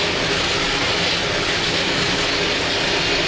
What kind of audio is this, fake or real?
real